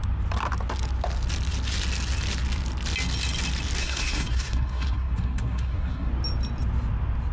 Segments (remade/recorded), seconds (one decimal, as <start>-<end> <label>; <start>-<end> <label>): 0.0-3.8 recorded; 3.8-6.1 remade; 6.1-7.3 recorded